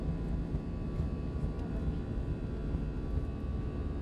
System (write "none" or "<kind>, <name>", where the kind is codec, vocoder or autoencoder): none